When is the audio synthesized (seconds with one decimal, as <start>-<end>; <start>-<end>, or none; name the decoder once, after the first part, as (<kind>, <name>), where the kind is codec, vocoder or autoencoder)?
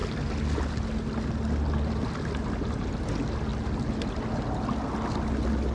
none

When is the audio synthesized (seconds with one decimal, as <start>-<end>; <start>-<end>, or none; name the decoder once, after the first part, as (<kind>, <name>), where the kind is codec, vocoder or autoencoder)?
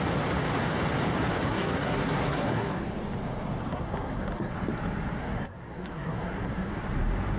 1.5-2.7 (codec, SNAC); 3.7-4.5; 5.2-6.7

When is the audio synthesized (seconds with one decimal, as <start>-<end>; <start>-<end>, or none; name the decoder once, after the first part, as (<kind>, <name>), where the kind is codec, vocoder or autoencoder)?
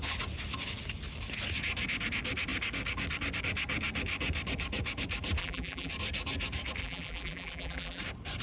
5.4-5.9 (vocoder, BigVGAN v2); 6.8-8.0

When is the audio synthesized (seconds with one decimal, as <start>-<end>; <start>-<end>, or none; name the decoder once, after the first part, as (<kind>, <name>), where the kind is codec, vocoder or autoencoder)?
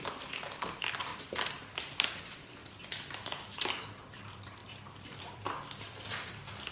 0.0-1.1 (vocoder, BigVGAN v2); 2.2-6.7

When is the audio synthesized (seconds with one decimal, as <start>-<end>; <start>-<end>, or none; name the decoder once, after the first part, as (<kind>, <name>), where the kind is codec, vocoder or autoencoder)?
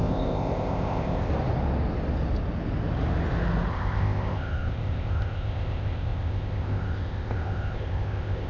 0.0-1.3 (codec, ZipCodec); 3.7-8.5